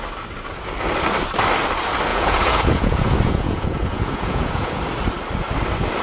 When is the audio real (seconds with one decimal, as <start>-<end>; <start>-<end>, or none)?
0.0-2.1; 4.8-6.0